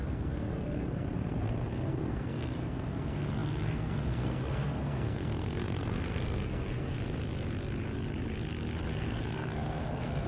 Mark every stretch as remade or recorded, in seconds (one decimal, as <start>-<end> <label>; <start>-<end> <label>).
0.0-7.2 remade; 7.2-8.9 recorded; 8.9-10.3 remade